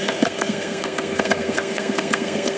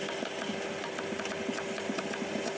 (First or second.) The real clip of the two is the second